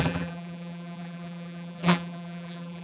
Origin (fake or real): fake